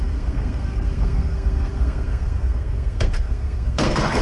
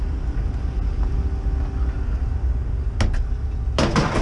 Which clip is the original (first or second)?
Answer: second